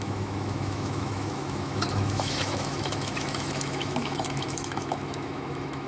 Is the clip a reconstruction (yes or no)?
yes